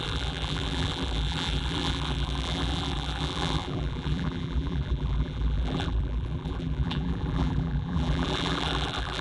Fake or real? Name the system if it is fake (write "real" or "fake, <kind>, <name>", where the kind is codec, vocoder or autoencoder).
fake, vocoder, BigVGAN v2